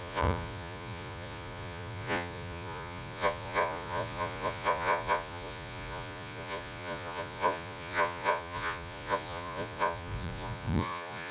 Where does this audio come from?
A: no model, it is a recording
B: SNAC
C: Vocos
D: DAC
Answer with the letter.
C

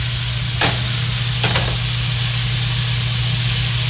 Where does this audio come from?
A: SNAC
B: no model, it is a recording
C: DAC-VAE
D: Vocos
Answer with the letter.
B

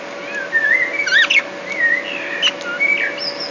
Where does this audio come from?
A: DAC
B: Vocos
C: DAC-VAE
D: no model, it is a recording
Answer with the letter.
D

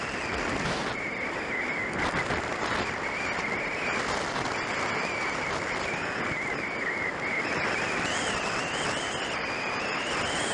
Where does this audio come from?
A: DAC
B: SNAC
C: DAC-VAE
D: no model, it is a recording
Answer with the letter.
D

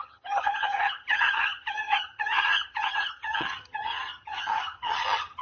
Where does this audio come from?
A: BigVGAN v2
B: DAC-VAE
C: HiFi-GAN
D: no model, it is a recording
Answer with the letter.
C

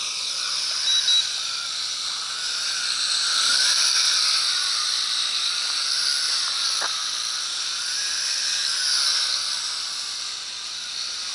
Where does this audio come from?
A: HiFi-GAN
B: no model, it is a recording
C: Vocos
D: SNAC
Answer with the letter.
B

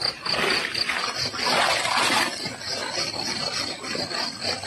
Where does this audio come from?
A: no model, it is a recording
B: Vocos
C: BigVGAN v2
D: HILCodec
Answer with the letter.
A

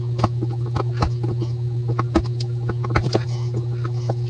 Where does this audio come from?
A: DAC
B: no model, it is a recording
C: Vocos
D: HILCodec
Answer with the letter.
B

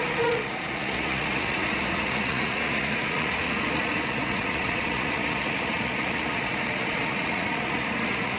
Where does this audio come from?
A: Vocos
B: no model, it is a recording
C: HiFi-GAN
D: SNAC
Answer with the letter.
A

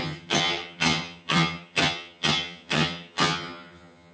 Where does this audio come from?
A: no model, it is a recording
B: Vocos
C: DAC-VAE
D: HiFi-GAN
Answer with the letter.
D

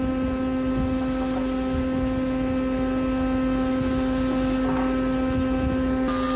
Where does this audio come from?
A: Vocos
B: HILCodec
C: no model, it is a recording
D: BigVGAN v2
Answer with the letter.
C